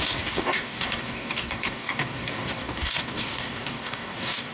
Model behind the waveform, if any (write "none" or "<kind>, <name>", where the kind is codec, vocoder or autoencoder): codec, DAC